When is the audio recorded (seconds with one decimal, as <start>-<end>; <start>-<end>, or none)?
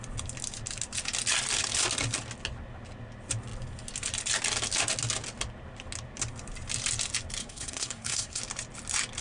0.0-7.4; 8.4-9.2